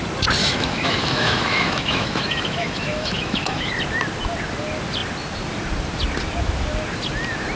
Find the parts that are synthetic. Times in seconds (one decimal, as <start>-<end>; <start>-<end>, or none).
0.4-3.7